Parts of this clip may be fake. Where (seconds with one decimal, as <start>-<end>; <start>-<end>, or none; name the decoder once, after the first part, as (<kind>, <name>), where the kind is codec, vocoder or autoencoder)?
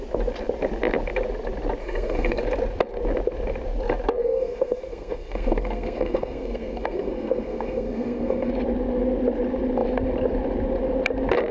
1.8-2.4 (codec, SNAC); 4.2-8.5